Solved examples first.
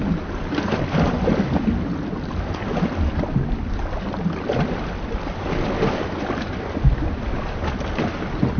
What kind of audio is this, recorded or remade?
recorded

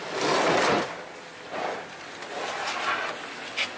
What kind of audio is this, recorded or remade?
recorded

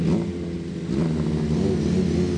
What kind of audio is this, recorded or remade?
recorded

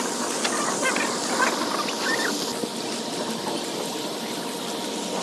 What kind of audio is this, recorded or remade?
recorded